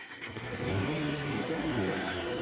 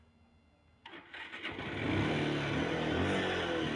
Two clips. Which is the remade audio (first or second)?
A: first